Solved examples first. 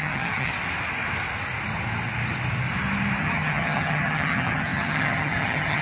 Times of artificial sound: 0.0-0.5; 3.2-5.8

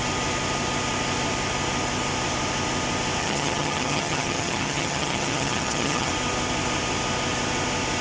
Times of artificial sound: 3.2-6.1

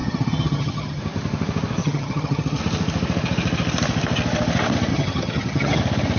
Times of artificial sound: 0.0-1.0; 1.8-2.6; 4.9-5.8

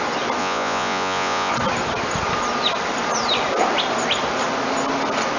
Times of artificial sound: 0.4-1.5

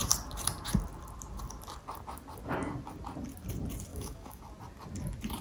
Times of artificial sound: 3.9-4.4

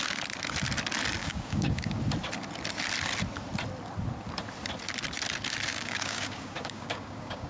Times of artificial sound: 1.2-2.0; 5.7-7.5

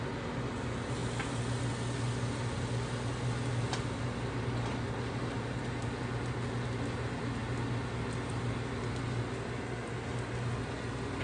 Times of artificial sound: none